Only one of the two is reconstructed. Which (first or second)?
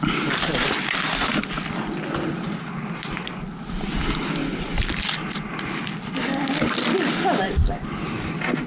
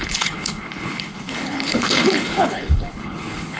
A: second